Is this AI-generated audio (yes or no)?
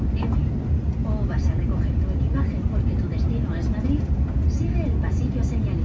no